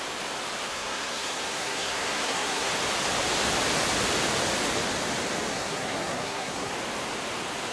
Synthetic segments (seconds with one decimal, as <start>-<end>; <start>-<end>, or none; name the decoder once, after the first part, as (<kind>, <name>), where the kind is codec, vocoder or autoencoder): 0.7-2.7 (codec, SNAC); 5.5-6.7

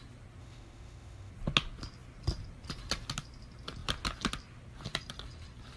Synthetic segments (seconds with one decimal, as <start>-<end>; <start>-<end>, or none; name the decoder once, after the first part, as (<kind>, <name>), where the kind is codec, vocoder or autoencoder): 0.4-1.3 (autoencoder, DAC-VAE)